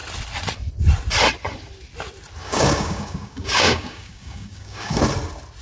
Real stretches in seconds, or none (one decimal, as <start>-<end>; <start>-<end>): 0.0-2.4; 5.0-5.6